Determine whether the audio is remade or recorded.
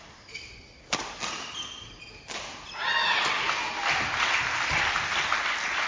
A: recorded